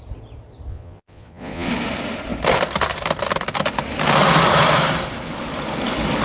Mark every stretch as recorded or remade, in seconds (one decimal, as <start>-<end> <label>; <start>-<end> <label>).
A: 0.0-0.7 recorded; 0.7-1.7 remade; 1.7-6.2 recorded